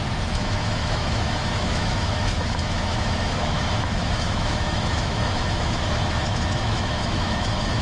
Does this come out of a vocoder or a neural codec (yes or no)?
yes